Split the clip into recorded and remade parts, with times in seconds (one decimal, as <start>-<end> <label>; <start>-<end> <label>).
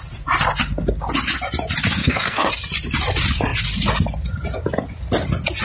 0.0-2.0 recorded; 2.0-2.5 remade; 2.5-5.6 recorded